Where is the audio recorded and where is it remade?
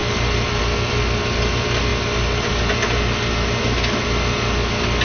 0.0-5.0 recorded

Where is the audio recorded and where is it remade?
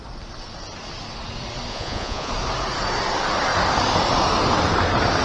0.0-1.7 recorded; 1.7-2.3 remade; 2.3-5.2 recorded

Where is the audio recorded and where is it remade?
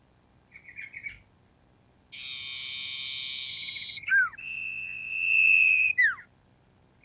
0.0-4.4 recorded; 4.4-5.9 remade; 5.9-7.0 recorded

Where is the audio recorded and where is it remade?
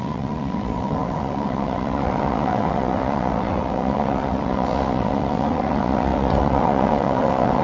0.0-7.6 remade